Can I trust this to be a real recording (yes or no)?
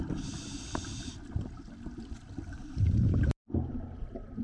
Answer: yes